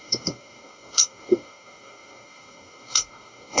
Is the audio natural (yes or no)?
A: no